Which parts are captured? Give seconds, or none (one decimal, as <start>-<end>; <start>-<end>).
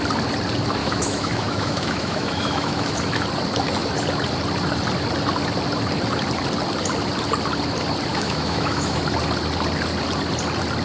0.0-0.8; 3.0-8.1; 9.0-10.8